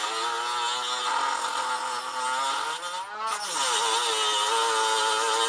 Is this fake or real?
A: real